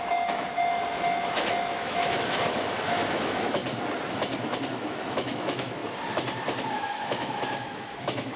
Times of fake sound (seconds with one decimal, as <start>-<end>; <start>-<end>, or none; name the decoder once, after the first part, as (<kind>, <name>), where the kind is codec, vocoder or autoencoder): 0.0-3.6 (autoencoder, DAC-VAE); 4.7-5.8; 6.7-8.4